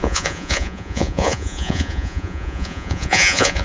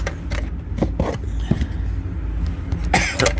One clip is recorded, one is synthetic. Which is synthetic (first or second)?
first